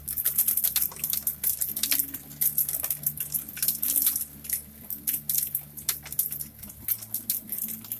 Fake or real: real